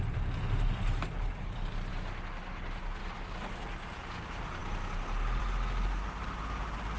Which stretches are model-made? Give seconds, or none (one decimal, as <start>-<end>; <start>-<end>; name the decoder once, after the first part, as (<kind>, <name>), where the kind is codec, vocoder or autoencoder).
none